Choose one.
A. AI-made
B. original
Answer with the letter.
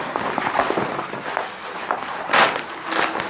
B